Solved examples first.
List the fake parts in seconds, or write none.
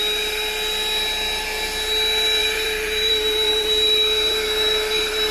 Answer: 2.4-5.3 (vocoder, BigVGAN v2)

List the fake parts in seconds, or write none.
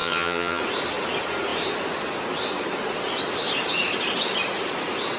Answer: 0.0-0.6 (vocoder, HiFi-GAN)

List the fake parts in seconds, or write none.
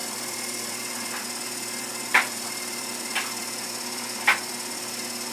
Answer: 0.0-1.2 (vocoder, BigVGAN v2); 2.1-4.5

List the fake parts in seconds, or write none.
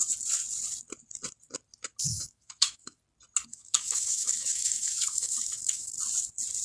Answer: 2.1-3.0 (autoencoder, DAC-VAE); 3.5-5.9